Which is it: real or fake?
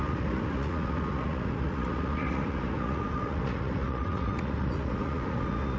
fake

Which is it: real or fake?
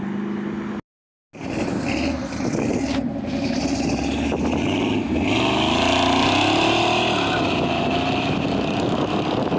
real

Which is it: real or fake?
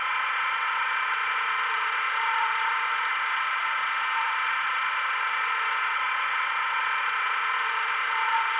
fake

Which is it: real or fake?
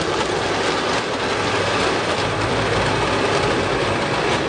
real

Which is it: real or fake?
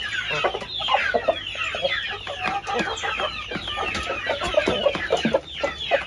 real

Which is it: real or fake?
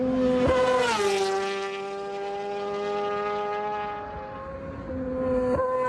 real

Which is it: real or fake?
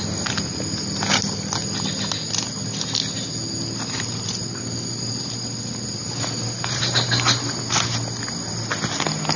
real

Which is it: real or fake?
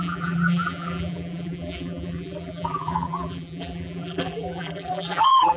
fake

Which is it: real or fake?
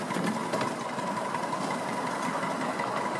real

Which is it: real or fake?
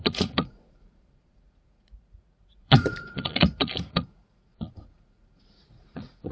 fake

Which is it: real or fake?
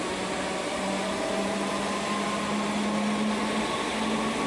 real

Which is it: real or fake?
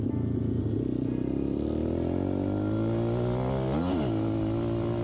real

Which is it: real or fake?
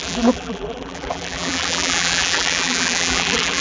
fake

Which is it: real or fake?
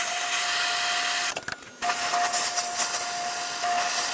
real